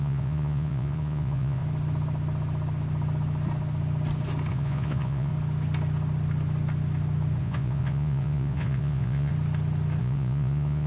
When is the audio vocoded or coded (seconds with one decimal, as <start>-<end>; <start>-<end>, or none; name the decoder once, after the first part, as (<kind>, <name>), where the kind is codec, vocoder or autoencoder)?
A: 0.0-1.6 (vocoder, Vocos); 4.5-5.3; 7.4-9.3; 10.0-10.9